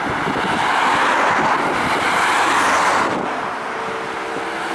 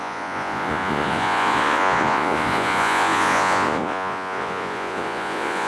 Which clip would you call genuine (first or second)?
first